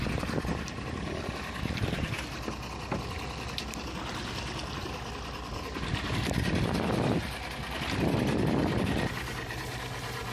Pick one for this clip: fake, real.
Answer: real